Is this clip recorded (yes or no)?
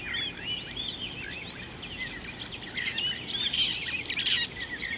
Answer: yes